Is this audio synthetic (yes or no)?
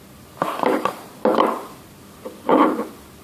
no